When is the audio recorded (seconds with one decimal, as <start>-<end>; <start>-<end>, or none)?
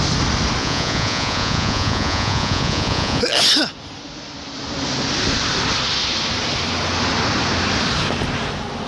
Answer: 0.0-0.6; 3.2-8.9